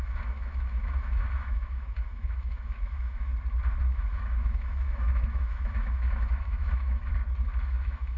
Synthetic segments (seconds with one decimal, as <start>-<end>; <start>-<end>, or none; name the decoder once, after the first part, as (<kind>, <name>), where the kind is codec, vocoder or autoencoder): 0.0-3.3 (autoencoder, DAC-VAE); 3.8-7.1; 7.6-8.2